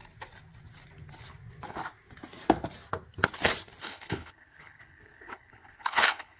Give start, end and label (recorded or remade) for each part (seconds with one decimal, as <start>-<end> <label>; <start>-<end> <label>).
0.0-3.8 recorded; 3.8-6.4 remade